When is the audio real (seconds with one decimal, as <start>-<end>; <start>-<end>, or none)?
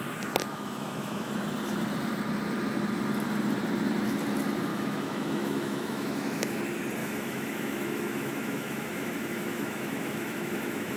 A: 0.0-0.4; 1.3-4.7; 6.6-7.0